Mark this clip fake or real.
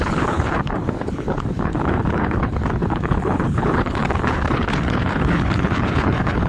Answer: fake